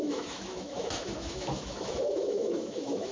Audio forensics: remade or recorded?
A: remade